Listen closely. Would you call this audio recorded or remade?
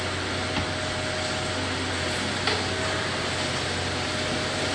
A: recorded